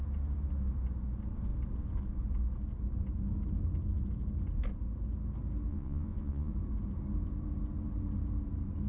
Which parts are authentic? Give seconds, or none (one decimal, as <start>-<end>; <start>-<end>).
0.0-5.7; 6.5-8.9